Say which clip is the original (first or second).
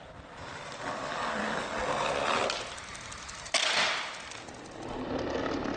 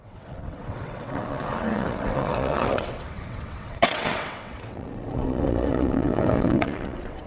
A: first